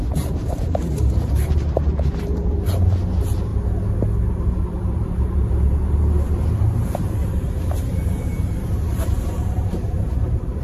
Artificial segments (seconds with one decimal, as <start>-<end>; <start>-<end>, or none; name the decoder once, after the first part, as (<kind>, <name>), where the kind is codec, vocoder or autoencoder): 0.0-3.5 (vocoder, BigVGAN v2); 4.3-10.6

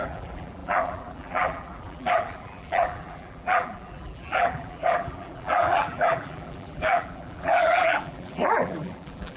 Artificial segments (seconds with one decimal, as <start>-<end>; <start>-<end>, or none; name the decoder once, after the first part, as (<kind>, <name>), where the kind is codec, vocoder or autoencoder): 0.0-9.4 (vocoder, BigVGAN v2)